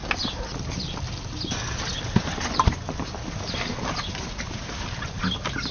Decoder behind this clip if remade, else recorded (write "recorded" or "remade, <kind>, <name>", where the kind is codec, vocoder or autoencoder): recorded